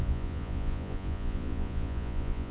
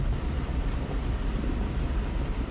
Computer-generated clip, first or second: first